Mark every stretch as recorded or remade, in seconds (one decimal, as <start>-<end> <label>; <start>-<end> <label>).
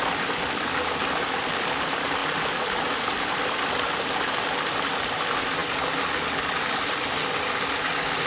0.0-8.3 recorded